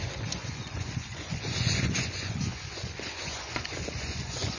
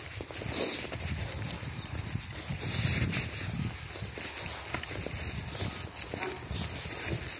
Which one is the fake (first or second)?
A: first